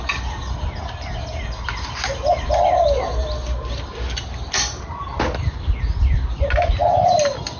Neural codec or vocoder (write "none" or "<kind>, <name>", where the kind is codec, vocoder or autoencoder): none